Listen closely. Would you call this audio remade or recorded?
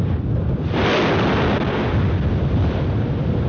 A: recorded